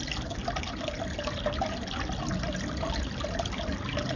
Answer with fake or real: real